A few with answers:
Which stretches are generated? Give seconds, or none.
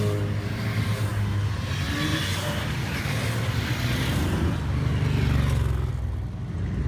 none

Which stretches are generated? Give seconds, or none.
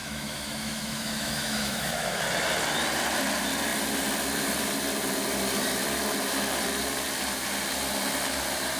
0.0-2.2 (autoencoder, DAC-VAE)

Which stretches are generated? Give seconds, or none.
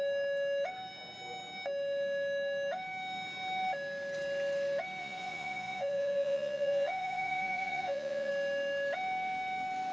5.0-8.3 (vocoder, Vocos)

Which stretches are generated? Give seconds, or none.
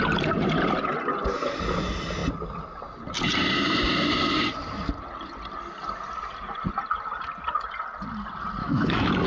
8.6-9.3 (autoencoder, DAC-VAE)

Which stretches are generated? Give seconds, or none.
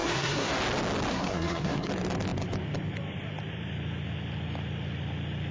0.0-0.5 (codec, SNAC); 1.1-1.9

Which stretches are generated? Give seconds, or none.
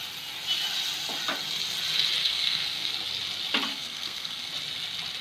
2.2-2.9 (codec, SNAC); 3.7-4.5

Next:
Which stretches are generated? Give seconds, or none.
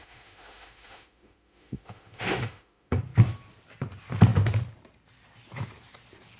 0.0-3.0 (autoencoder, DAC-VAE)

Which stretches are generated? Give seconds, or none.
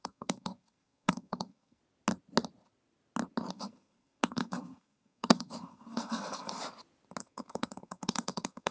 0.0-1.8 (codec, SNAC); 3.5-6.6; 7.2-8.7